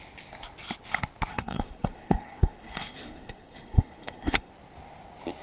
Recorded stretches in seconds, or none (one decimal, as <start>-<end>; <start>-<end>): 0.0-1.3; 4.5-5.4